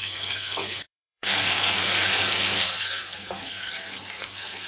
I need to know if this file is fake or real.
fake